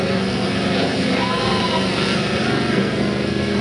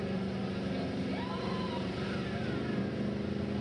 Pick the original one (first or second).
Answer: second